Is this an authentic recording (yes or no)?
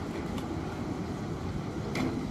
yes